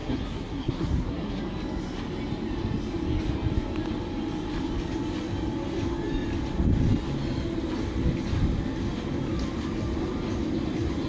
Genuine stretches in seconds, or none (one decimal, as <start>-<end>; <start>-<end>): 1.4-11.1